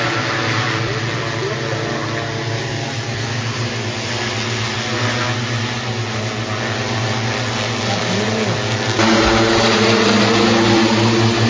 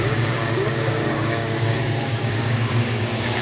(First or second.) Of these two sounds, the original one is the first